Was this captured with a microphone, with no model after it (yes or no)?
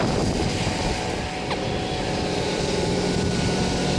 no